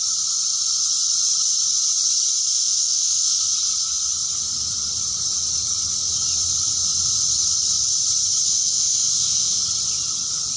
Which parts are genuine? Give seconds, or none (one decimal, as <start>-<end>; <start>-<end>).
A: 0.0-2.5; 3.5-8.5; 9.6-10.6